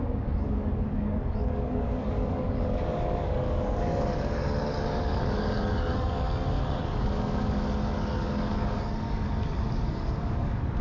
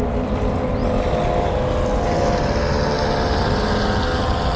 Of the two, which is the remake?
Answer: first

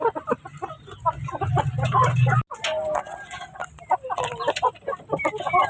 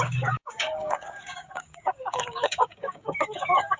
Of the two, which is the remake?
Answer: second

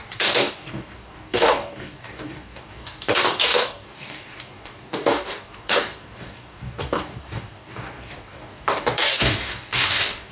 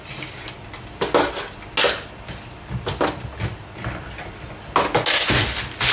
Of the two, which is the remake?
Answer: first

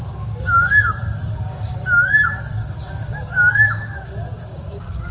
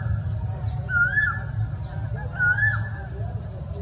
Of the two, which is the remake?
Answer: first